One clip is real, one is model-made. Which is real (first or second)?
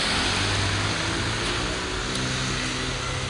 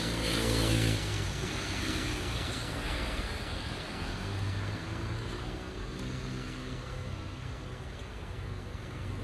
first